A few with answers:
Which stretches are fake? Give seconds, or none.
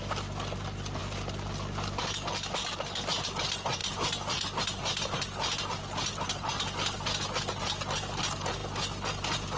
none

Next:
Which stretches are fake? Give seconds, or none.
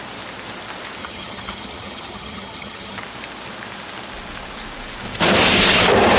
1.0-3.0 (vocoder, HiFi-GAN)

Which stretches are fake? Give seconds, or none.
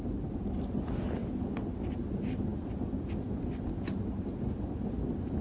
none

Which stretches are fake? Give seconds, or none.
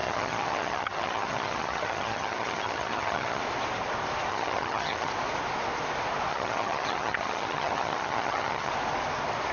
0.0-3.4 (vocoder, HiFi-GAN); 4.3-5.1; 6.3-8.7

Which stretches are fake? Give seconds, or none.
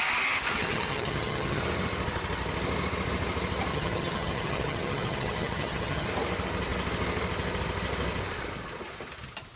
0.6-1.6 (vocoder, HiFi-GAN); 3.7-6.1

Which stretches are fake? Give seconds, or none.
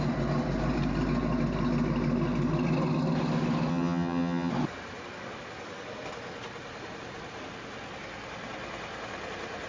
3.7-4.5 (vocoder, HiFi-GAN)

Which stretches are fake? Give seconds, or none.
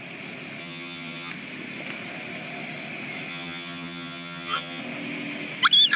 0.6-1.3 (vocoder, HiFi-GAN); 3.3-4.8